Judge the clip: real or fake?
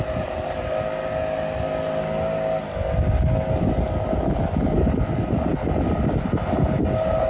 real